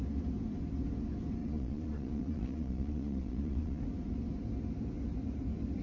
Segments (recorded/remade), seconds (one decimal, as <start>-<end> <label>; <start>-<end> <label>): 0.0-1.4 recorded; 1.4-3.8 remade; 3.8-5.8 recorded